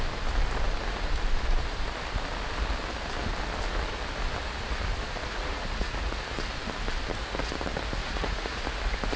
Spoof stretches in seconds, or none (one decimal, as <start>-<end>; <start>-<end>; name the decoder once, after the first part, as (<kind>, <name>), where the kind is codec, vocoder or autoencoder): 5.3-6.1 (vocoder, Vocos); 8.0-8.6